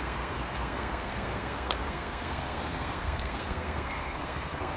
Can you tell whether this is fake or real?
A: fake